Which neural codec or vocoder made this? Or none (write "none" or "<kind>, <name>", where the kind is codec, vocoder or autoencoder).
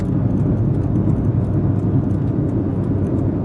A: none